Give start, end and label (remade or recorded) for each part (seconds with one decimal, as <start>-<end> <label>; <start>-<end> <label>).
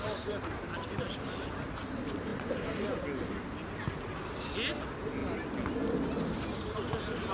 0.0-7.3 recorded